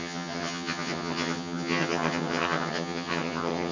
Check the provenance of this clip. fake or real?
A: fake